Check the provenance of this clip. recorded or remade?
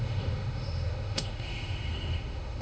remade